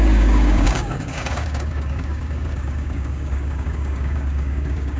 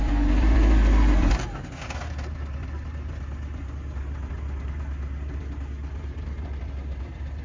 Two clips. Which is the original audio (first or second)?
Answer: second